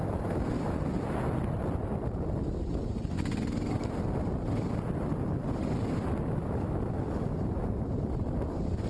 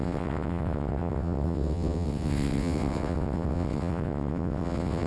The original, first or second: first